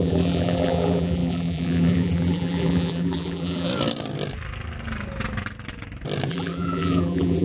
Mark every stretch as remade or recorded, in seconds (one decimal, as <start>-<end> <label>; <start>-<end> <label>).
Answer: 0.0-3.7 remade; 3.7-6.3 recorded; 6.3-7.4 remade